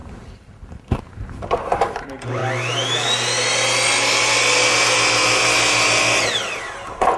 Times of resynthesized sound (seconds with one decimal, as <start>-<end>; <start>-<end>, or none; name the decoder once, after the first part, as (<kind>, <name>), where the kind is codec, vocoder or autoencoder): 1.4-2.4 (vocoder, BigVGAN v2); 6.6-7.2